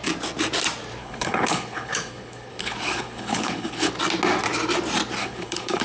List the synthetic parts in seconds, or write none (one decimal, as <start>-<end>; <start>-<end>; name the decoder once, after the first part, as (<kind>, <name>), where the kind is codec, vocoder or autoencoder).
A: 1.0-3.9 (codec, HILCodec); 5.2-5.8